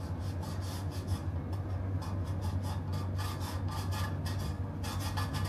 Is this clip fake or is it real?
real